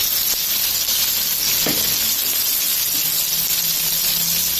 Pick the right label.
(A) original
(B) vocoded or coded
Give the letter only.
A